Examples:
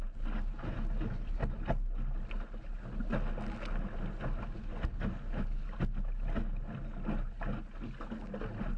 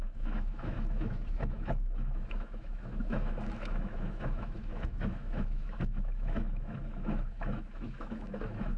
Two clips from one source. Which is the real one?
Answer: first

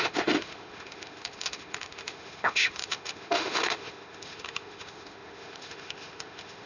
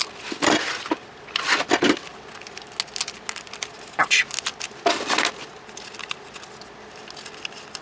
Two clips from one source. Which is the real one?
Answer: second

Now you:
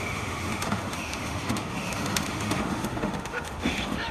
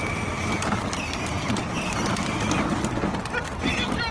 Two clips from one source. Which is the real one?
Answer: second